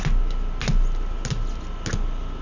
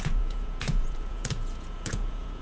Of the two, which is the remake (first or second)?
second